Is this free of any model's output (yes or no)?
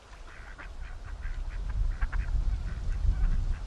yes